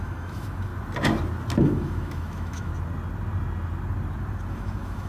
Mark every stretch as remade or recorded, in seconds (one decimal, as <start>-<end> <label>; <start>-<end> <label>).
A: 0.0-0.7 remade; 0.7-1.6 recorded; 1.6-2.7 remade; 2.7-4.5 recorded; 4.5-5.1 remade